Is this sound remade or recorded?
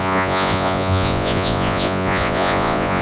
remade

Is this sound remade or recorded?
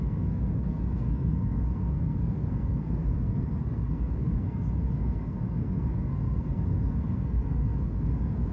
remade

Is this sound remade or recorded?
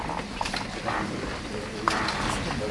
recorded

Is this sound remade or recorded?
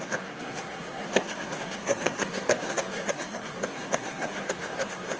remade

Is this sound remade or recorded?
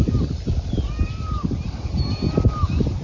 recorded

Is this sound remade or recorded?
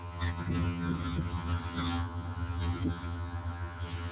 remade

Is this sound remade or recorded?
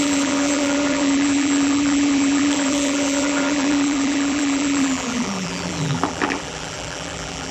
remade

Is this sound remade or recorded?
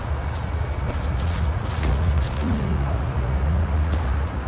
remade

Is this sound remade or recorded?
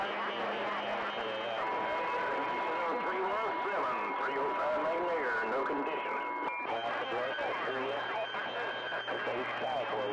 recorded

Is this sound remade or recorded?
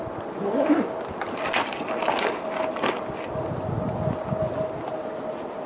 recorded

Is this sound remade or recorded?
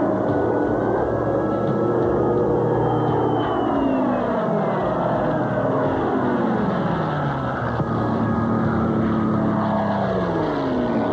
recorded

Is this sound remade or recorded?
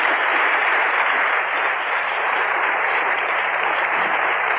remade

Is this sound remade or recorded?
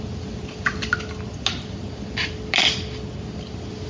recorded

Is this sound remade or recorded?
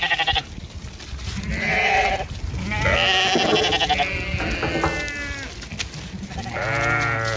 recorded